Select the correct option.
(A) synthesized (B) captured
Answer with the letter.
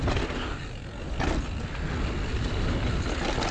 B